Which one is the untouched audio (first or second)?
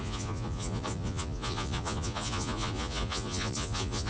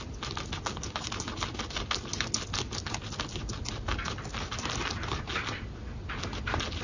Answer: second